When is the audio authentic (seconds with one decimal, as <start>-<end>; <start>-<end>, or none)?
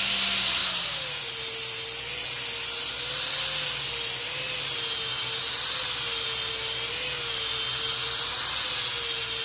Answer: 0.0-9.4